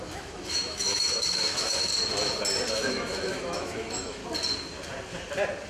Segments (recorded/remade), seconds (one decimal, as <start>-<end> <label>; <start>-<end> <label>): 0.0-1.9 remade; 1.9-2.7 recorded; 2.7-4.2 remade; 4.2-5.7 recorded